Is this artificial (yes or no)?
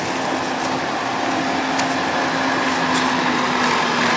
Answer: no